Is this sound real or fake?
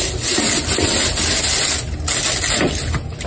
real